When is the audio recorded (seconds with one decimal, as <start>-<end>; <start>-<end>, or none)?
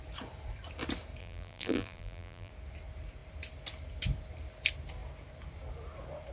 0.0-1.2; 2.5-6.3